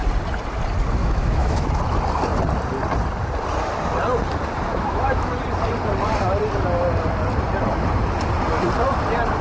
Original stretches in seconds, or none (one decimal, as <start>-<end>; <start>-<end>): 0.0-1.0; 1.8-4.7; 5.3-9.4